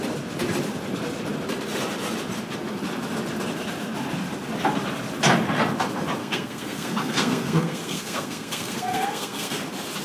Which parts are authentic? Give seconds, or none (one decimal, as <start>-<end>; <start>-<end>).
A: 0.0-6.2; 9.6-10.0